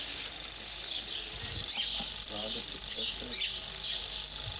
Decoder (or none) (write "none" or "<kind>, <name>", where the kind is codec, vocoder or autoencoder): none